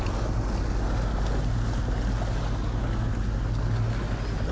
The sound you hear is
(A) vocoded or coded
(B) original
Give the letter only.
B